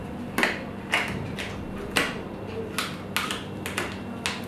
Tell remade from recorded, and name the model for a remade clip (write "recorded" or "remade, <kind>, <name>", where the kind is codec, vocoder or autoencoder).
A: recorded